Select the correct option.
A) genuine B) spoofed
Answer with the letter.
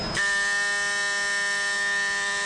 A